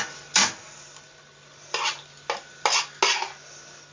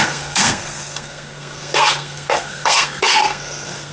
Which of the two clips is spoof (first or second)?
second